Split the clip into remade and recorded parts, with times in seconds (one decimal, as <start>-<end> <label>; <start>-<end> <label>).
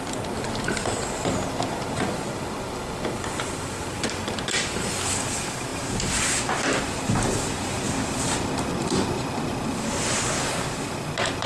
0.0-11.5 recorded